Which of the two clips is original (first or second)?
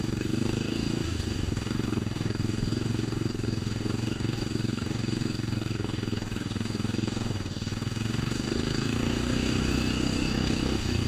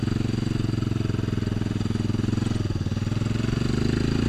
second